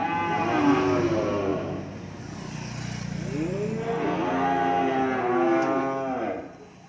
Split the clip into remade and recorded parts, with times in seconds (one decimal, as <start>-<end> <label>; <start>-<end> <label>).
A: 0.0-6.9 recorded

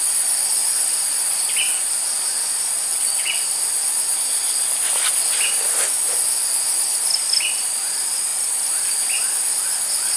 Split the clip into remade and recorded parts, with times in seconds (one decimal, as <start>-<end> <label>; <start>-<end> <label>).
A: 0.0-2.9 recorded; 2.9-3.4 remade; 3.4-10.2 recorded

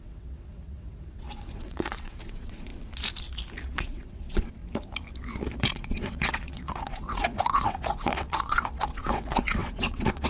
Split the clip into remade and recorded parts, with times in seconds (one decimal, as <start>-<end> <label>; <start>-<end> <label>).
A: 0.0-2.7 remade; 2.7-3.8 recorded; 3.8-4.6 remade; 4.6-5.6 recorded; 5.6-10.3 remade

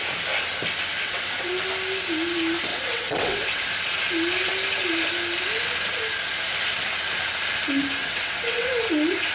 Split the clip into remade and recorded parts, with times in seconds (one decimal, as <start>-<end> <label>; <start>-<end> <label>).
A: 0.0-0.9 recorded; 0.9-1.5 remade; 1.5-2.7 recorded; 2.7-3.6 remade; 3.6-8.0 recorded; 8.0-8.7 remade; 8.7-9.3 recorded

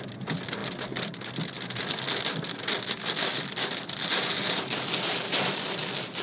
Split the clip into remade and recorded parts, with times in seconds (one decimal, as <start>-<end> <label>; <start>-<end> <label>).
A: 0.0-6.2 recorded

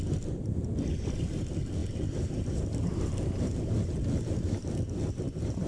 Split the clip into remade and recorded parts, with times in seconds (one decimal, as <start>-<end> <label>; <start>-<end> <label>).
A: 0.0-5.7 recorded